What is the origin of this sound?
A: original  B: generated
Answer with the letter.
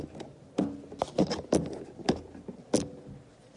A